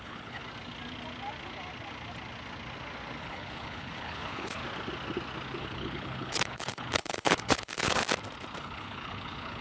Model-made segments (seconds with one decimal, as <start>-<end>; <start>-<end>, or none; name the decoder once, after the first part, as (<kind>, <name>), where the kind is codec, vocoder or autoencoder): 0.0-0.4 (codec, HILCodec); 3.2-4.6; 5.6-8.0; 8.6-9.6